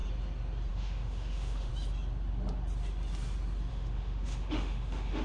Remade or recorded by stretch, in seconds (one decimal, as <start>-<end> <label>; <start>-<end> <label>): 0.0-0.7 recorded; 0.7-1.7 remade; 1.7-3.7 recorded; 3.7-5.2 remade